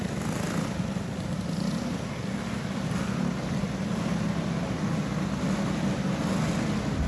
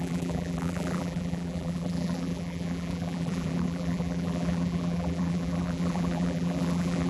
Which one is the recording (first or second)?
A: first